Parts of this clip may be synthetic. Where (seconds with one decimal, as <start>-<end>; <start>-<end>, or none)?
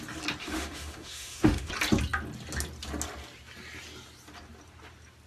0.4-1.7